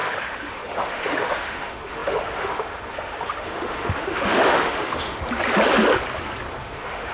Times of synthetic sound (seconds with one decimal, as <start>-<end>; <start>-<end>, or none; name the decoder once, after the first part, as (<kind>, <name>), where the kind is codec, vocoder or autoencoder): 0.0-5.2 (autoencoder, DAC-VAE); 6.6-7.1

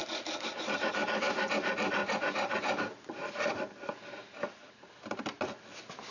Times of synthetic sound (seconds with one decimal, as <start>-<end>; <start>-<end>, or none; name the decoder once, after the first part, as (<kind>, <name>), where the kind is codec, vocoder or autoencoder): 0.0-0.9 (vocoder, BigVGAN v2); 2.0-3.9; 4.6-5.3

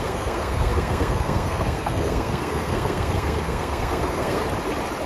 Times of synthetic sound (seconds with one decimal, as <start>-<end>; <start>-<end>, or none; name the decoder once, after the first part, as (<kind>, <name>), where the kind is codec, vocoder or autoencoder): 0.0-4.4 (codec, SNAC)

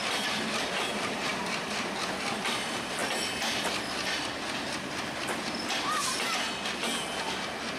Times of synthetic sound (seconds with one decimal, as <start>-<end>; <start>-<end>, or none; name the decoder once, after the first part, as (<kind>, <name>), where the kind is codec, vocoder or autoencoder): 0.0-3.0 (vocoder, BigVGAN v2)

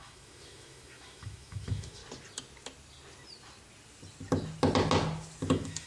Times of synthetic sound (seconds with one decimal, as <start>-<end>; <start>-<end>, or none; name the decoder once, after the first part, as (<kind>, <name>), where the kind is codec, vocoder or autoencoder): 0.0-2.0 (autoencoder, DAC-VAE); 5.5-5.9